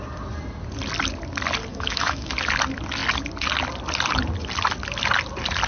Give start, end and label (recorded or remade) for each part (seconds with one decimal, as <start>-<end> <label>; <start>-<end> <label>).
0.0-1.7 recorded; 1.7-2.3 remade; 2.3-5.7 recorded